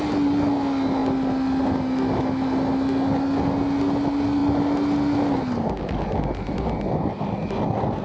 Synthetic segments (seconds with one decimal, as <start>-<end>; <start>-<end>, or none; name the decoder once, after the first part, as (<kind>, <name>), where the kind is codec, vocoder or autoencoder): none